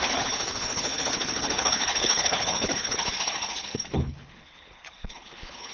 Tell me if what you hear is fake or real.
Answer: fake